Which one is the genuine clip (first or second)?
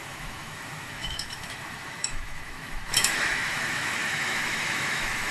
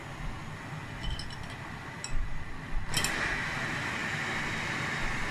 second